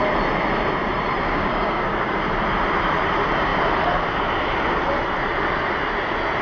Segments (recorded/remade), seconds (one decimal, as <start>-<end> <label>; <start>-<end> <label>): 0.0-1.2 recorded; 1.2-2.2 remade; 2.2-6.4 recorded